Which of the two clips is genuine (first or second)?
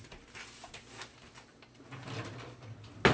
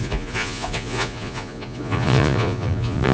first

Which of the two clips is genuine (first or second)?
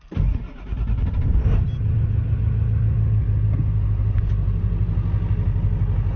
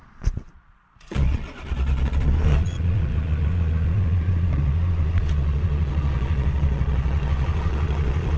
first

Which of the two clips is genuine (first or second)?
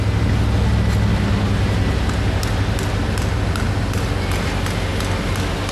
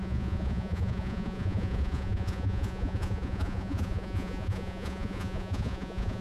first